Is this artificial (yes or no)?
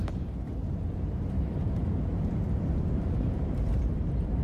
yes